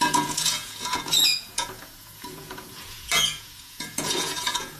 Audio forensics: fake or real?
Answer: fake